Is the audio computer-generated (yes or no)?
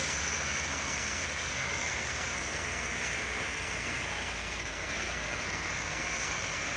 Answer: yes